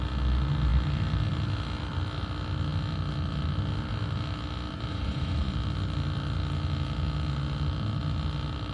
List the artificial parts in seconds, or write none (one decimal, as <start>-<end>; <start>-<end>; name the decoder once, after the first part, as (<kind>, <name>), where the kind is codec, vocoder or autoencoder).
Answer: 4.9-5.5 (vocoder, Vocos)